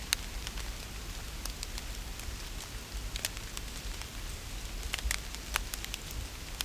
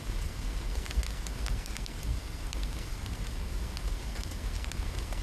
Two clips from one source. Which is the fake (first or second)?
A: second